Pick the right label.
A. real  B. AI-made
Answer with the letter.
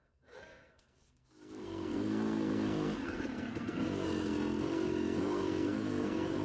B